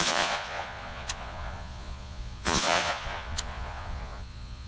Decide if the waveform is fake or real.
fake